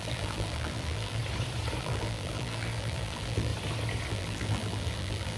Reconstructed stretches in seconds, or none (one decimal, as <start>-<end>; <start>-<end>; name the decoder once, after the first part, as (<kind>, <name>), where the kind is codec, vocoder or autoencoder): 0.0-1.2 (vocoder, BigVGAN v2); 1.8-3.5; 4.1-5.4